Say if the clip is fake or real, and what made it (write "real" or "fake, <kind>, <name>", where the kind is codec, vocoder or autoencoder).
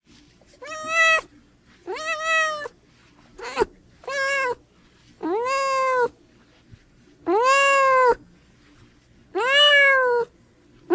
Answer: real